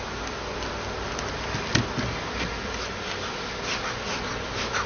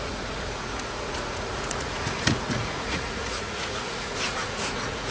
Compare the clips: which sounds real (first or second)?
first